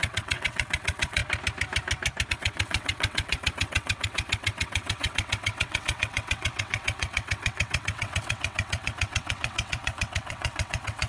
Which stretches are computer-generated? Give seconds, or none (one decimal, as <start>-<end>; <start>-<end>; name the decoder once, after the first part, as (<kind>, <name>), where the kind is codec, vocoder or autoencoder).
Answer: 0.0-1.2 (vocoder, WaveNeXt); 2.3-11.1